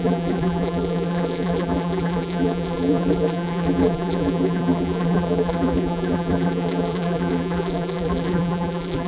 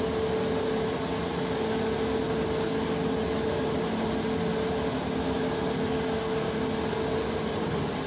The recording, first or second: second